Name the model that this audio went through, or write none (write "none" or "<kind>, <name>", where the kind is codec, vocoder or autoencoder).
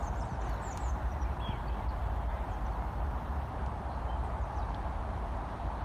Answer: vocoder, BigVGAN v2